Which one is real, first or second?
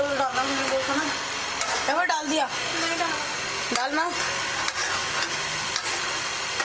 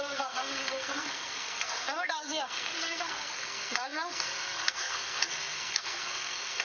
first